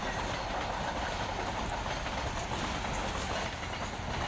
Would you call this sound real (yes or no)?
yes